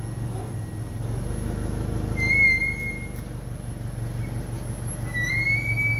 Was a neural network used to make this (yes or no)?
no